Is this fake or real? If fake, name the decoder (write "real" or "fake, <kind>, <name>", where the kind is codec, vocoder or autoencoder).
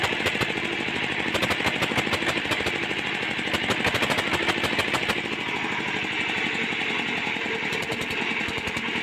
real